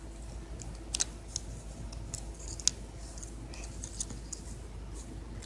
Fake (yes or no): no